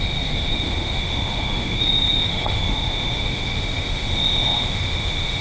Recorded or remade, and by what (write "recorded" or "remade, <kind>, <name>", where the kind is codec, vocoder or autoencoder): remade, autoencoder, DAC-VAE